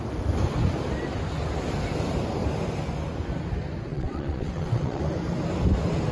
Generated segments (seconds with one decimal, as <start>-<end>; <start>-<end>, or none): 3.9-5.0